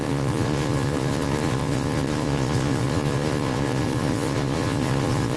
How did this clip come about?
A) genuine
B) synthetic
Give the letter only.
B